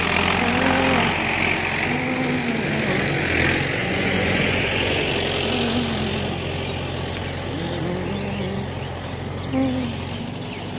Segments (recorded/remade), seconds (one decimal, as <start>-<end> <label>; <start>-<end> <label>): 0.0-3.8 recorded; 3.8-5.1 remade; 5.1-10.8 recorded